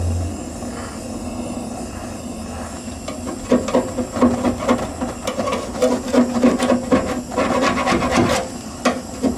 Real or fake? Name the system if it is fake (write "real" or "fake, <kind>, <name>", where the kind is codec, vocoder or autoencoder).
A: real